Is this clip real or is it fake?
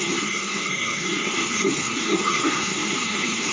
fake